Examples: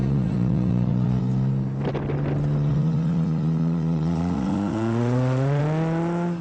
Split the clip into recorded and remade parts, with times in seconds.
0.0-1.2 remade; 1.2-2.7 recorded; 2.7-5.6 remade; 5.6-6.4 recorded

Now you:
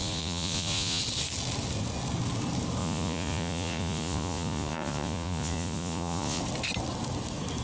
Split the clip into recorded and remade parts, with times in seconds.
0.0-1.0 remade; 1.0-2.8 recorded; 2.8-6.4 remade; 6.4-7.6 recorded

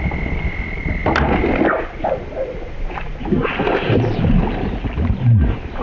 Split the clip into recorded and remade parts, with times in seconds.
0.0-5.8 recorded